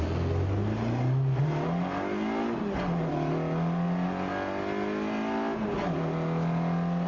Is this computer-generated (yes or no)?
no